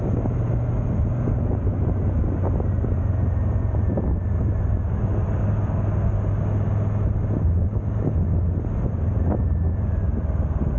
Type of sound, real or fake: real